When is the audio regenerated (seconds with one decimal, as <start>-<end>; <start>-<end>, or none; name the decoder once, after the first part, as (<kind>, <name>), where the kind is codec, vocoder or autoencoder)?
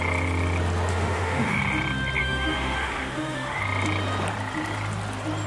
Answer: 0.9-1.6 (autoencoder, DAC-VAE); 2.2-3.6